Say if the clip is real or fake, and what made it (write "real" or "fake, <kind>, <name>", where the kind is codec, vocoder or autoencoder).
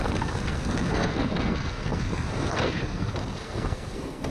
fake, codec, SNAC